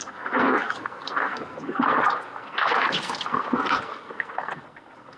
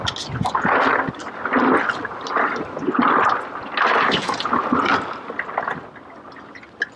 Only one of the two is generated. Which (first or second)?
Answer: first